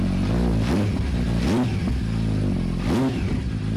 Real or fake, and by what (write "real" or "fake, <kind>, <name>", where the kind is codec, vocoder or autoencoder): real